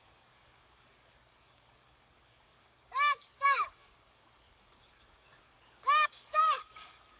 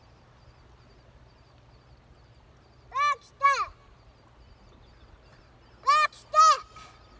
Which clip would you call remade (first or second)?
first